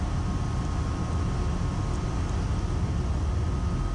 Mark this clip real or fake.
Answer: real